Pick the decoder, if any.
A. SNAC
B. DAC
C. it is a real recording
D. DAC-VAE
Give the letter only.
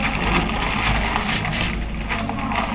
C